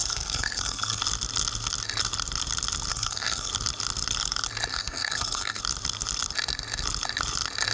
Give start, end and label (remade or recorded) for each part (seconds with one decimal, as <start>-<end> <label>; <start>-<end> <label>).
0.0-1.0 remade; 1.0-2.9 recorded; 2.9-3.5 remade; 3.5-4.7 recorded; 4.7-5.6 remade; 5.6-7.7 recorded